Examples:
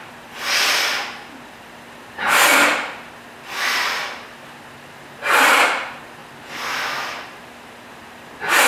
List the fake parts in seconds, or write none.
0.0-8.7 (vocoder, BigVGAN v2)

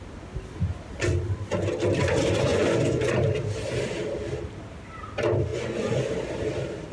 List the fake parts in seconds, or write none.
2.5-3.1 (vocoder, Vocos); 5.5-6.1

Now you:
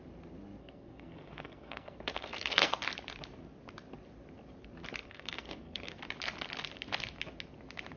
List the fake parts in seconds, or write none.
0.6-2.7 (codec, SNAC); 5.0-6.0